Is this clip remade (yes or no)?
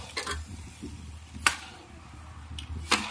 no